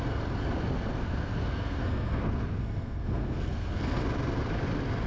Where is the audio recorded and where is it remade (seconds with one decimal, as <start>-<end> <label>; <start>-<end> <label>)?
0.0-0.9 recorded; 0.9-4.0 remade; 4.0-5.1 recorded